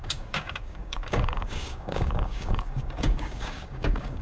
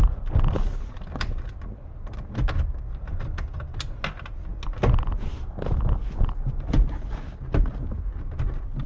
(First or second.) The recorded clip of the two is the second